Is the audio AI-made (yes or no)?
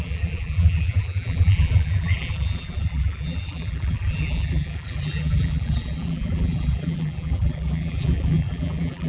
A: yes